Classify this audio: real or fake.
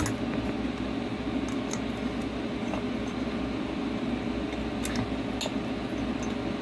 real